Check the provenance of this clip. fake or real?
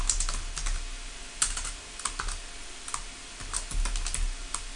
real